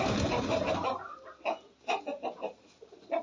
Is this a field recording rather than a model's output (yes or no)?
yes